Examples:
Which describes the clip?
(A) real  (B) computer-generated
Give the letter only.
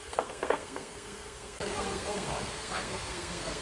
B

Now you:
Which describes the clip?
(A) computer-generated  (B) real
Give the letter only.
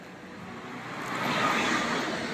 B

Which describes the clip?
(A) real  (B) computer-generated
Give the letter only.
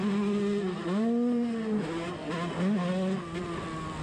A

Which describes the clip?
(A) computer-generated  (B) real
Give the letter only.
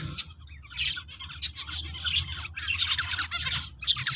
B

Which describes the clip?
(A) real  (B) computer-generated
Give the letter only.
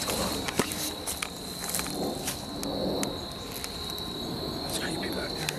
A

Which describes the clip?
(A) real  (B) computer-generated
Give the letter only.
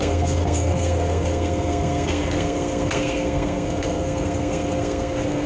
B